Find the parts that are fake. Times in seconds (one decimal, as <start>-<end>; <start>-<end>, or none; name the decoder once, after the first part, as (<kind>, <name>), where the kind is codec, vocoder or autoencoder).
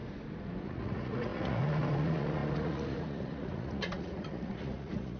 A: 0.6-5.2 (vocoder, Vocos)